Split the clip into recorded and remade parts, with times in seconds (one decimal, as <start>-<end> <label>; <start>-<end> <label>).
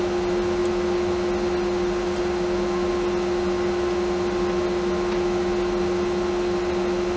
0.0-7.2 recorded